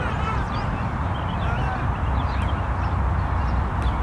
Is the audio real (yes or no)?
yes